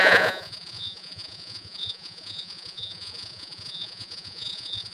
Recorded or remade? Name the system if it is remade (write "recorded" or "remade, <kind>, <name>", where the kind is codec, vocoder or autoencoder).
remade, vocoder, Vocos